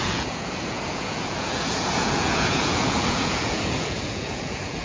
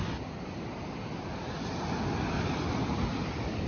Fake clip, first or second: first